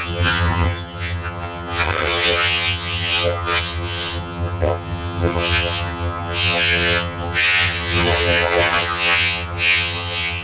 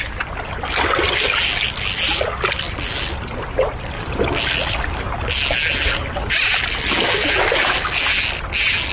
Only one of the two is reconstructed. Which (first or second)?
first